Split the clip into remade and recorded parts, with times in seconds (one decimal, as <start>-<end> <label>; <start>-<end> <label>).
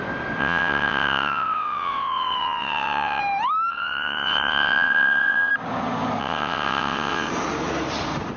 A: 0.0-0.4 recorded; 0.4-3.2 remade; 3.2-3.7 recorded; 3.7-5.5 remade; 5.5-6.2 recorded; 6.2-7.3 remade; 7.3-8.4 recorded